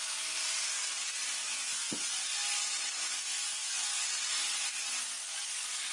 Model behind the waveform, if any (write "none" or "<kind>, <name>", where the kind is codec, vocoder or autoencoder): none